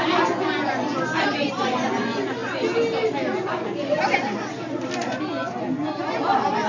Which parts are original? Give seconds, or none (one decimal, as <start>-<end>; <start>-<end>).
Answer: 0.0-6.7